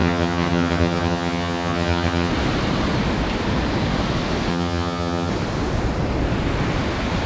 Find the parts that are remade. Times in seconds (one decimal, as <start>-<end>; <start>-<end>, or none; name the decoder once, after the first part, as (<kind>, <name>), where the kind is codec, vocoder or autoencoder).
0.0-2.3 (vocoder, HiFi-GAN); 4.5-5.3